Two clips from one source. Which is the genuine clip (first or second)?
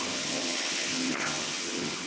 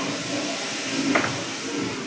second